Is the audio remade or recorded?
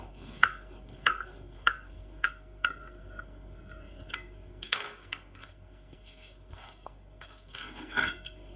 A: remade